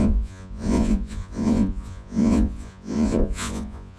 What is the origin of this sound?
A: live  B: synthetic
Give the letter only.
B